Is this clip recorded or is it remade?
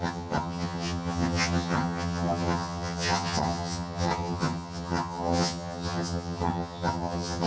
remade